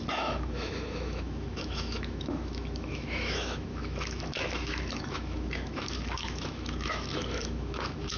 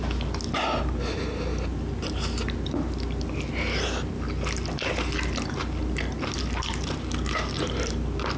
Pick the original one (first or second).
second